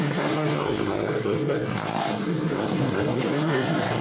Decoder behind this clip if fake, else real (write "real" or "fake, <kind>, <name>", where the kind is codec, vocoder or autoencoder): fake, codec, SNAC